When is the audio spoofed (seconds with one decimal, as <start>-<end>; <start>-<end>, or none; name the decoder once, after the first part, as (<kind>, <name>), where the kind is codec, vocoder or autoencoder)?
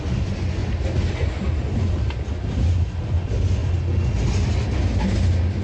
none